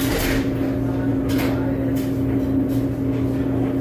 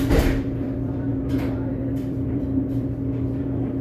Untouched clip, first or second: first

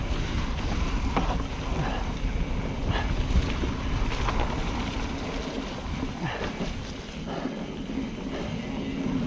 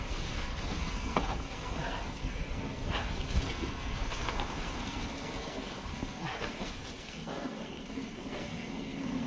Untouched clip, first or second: first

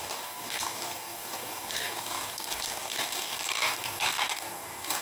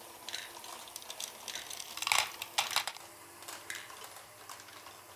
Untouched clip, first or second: second